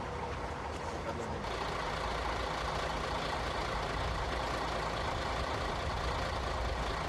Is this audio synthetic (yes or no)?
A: no